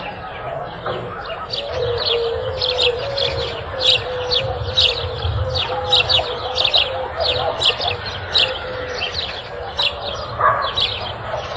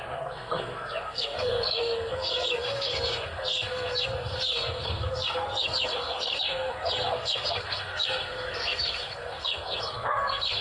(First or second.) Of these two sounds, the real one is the first